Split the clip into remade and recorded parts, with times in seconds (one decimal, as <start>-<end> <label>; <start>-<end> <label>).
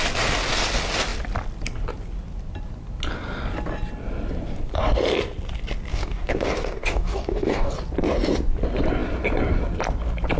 0.0-5.9 recorded; 5.9-7.7 remade; 7.7-10.4 recorded